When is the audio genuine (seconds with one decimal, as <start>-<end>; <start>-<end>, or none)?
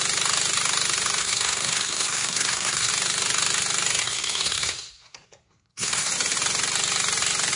0.0-1.2; 2.9-4.0; 6.1-7.6